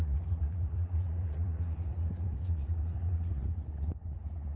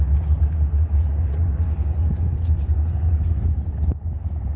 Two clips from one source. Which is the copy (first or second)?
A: first